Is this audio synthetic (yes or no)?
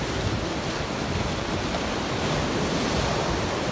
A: no